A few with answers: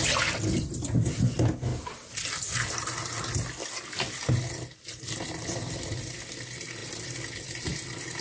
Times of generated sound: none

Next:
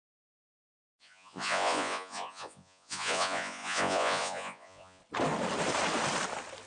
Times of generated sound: 0.0-5.0

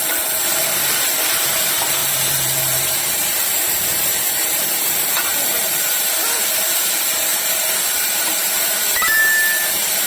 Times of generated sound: 2.0-3.6; 7.3-9.2

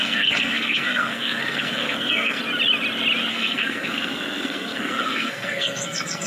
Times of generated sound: 0.0-2.4; 3.3-6.3